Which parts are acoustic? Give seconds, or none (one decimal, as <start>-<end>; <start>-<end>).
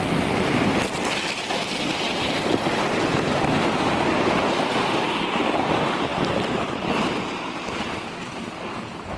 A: 0.0-9.2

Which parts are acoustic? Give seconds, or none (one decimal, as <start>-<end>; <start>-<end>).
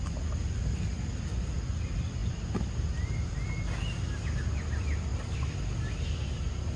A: 0.0-6.8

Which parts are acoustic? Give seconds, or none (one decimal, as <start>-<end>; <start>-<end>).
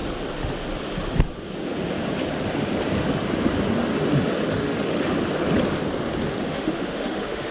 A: 0.0-4.5; 5.1-6.5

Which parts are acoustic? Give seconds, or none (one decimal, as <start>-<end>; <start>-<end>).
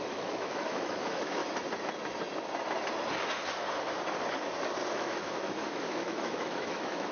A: 1.4-4.9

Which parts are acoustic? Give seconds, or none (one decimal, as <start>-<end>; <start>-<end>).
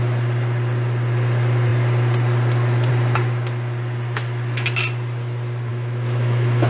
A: 0.0-5.7